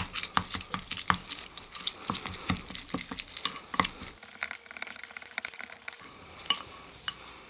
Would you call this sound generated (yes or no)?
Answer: yes